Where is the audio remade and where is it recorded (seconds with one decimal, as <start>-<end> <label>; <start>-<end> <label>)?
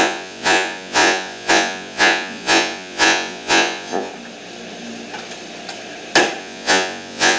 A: 0.0-4.1 remade; 4.1-6.4 recorded; 6.4-7.4 remade